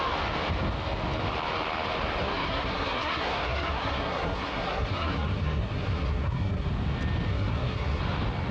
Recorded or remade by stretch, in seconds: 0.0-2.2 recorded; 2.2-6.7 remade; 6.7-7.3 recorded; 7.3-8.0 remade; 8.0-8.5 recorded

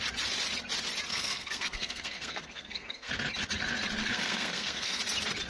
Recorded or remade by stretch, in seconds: 0.0-1.1 recorded; 1.1-3.1 remade; 3.1-4.0 recorded; 4.0-5.0 remade; 5.0-5.5 recorded